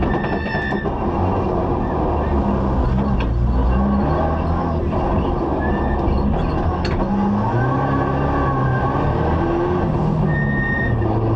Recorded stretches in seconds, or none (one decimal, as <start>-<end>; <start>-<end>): 0.0-11.4